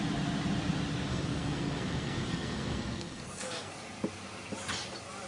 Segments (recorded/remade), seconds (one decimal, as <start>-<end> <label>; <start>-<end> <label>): 0.0-1.1 recorded; 1.1-3.7 remade; 3.7-5.3 recorded